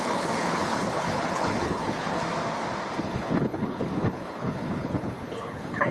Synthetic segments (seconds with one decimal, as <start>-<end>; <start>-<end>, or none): 0.0-2.2; 3.0-5.9